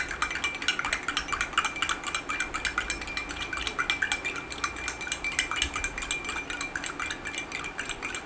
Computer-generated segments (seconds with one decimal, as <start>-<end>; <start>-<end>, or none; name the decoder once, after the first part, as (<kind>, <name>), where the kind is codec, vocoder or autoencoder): none